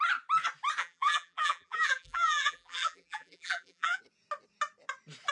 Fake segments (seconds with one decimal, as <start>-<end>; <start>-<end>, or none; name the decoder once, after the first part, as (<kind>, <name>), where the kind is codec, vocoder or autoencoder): 0.8-4.0 (vocoder, BigVGAN v2)